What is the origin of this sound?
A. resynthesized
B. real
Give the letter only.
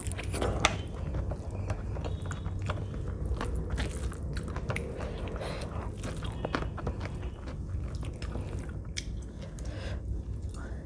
B